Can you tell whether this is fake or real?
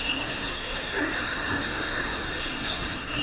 fake